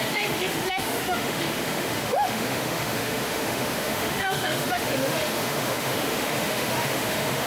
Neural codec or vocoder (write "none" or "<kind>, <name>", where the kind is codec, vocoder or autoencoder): autoencoder, DAC-VAE